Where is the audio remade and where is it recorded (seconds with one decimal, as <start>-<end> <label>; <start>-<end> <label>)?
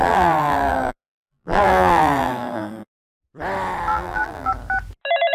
0.0-3.0 remade; 3.0-3.9 recorded; 3.9-4.5 remade; 4.5-5.3 recorded